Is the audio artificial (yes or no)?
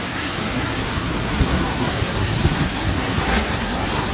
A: yes